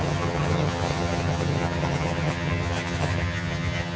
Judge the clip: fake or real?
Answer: fake